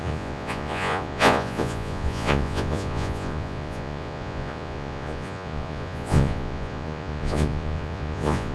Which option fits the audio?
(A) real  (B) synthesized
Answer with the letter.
B